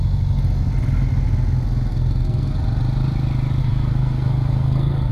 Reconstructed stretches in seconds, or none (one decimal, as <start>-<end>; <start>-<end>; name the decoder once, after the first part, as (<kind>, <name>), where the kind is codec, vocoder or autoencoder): 1.9-2.5 (codec, SNAC); 3.6-5.1